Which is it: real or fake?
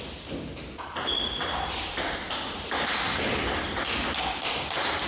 real